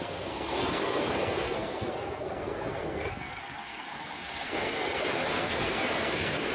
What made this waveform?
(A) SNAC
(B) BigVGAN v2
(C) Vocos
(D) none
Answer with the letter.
A